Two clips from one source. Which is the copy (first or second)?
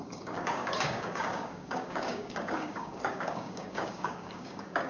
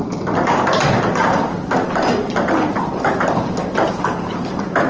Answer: first